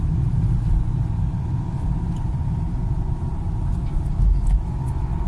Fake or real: real